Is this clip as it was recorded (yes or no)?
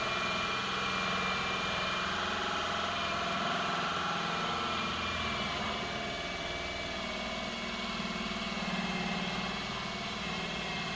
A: yes